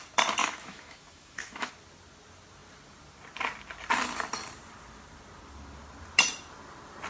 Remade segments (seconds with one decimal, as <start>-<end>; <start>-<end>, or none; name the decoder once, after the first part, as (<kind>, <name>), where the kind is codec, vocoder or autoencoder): 0.4-1.7 (autoencoder, DAC-VAE)